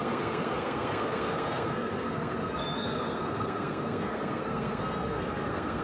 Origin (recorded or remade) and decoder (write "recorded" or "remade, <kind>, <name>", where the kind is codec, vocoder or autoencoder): remade, codec, SNAC